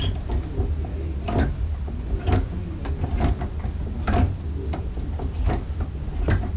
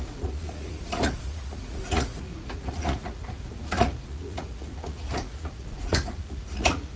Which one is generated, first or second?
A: second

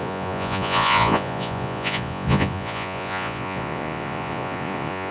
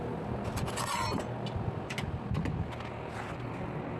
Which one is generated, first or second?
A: first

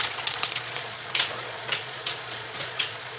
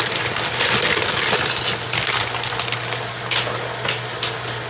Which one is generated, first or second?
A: first